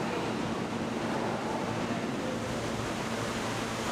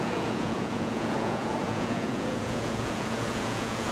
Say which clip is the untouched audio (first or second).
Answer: first